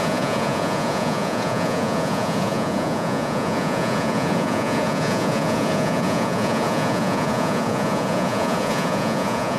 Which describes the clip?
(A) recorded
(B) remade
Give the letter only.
B